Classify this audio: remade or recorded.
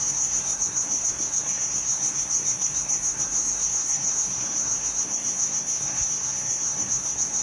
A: remade